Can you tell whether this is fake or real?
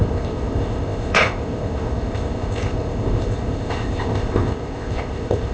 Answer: fake